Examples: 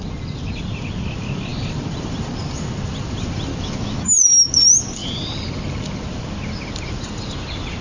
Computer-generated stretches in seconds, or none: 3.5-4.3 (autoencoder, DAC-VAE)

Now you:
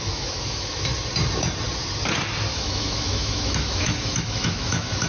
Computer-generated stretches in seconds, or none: 0.0-0.9 (autoencoder, DAC-VAE); 2.5-5.1

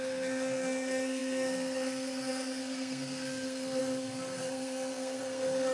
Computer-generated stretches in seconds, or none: 0.0-5.7 (codec, SNAC)

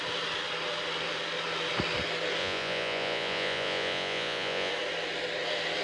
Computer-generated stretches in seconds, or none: 2.4-4.7 (vocoder, Vocos)